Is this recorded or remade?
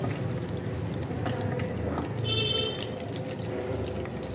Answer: recorded